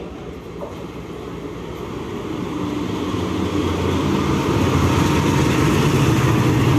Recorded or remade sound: recorded